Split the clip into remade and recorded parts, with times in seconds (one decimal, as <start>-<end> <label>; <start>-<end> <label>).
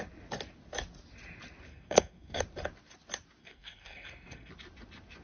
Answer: 0.0-1.7 recorded; 1.7-2.4 remade; 2.4-3.4 recorded; 3.4-4.5 remade; 4.5-5.2 recorded